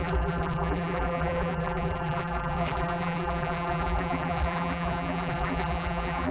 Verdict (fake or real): fake